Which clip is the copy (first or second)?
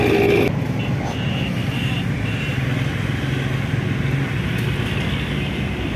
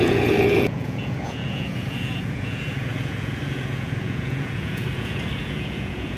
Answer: second